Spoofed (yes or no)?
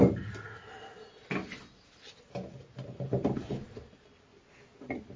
no